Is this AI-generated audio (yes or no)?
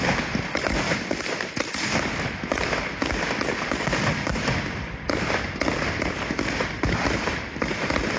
no